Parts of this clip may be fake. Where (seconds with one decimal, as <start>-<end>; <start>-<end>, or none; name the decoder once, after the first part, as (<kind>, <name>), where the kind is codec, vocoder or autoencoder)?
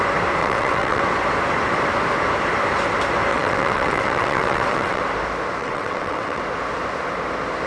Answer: 0.4-1.0 (vocoder, WaveNeXt); 3.3-5.0; 5.6-6.4